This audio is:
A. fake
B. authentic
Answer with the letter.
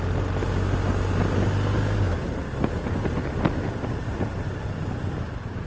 B